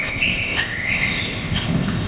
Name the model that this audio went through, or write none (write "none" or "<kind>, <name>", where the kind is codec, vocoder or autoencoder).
codec, ZipCodec